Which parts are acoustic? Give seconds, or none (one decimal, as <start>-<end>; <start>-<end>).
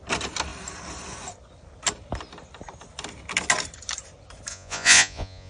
0.0-4.5